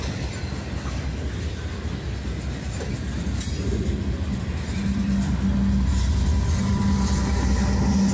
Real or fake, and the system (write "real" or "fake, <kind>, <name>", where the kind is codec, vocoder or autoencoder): real